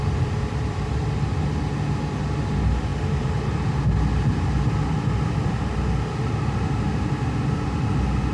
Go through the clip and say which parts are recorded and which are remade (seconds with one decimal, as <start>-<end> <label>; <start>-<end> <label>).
0.0-8.3 recorded